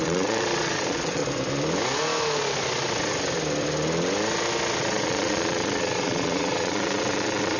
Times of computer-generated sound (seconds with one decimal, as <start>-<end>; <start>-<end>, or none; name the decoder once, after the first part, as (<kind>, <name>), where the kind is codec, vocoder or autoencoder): 0.0-1.2 (vocoder, Vocos); 4.8-7.6